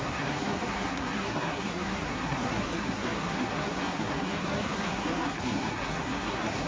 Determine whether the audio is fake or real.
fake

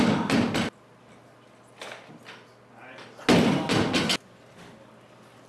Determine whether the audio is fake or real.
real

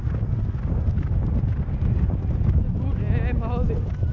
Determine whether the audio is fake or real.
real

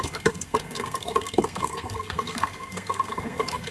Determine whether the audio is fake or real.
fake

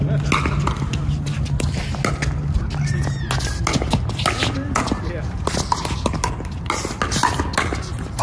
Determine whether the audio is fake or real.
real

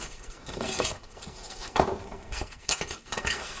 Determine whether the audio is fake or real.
fake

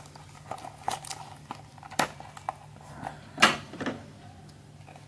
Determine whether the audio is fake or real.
real